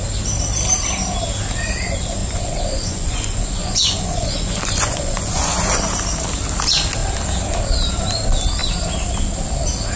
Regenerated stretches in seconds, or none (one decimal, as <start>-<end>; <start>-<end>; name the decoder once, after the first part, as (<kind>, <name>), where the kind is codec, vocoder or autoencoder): 2.2-5.8 (vocoder, Vocos)